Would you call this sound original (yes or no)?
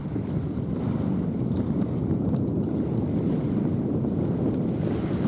yes